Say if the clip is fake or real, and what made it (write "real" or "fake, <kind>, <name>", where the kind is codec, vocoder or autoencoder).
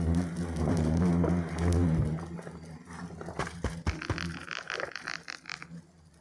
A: real